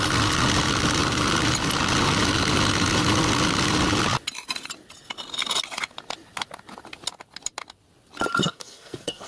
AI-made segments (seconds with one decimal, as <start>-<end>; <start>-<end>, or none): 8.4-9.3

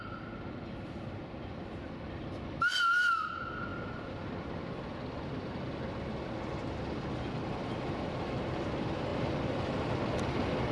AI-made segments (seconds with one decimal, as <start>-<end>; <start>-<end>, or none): none

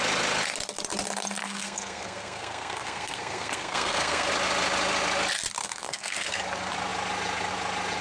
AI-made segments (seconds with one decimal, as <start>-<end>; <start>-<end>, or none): 1.4-4.3; 5.6-6.4